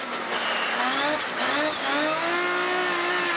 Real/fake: real